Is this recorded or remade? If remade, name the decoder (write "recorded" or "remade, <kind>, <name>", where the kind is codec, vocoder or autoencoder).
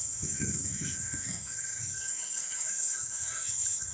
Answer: remade, codec, SNAC